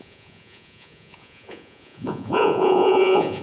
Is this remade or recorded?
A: remade